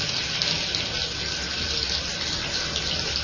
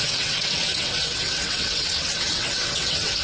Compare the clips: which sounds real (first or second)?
first